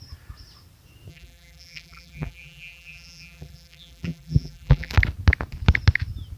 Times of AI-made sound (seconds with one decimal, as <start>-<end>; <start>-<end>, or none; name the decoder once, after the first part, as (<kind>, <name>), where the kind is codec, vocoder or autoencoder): 1.1-4.9 (vocoder, BigVGAN v2)